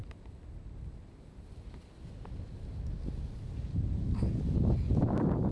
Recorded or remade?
recorded